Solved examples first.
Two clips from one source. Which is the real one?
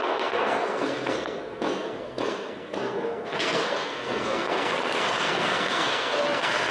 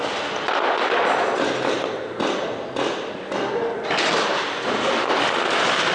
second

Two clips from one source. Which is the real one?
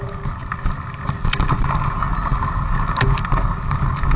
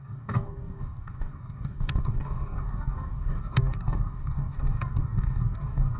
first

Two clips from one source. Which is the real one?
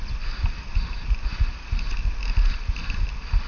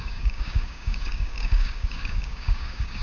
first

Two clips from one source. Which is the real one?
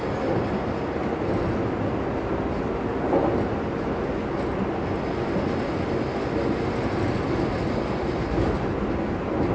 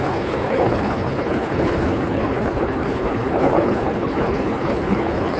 first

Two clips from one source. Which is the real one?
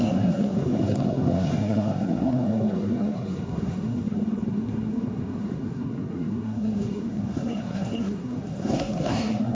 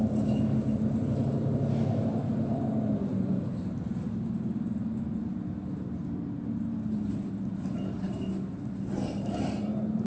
second